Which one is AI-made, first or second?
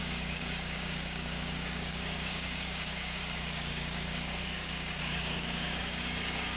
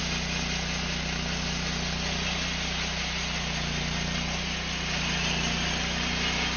first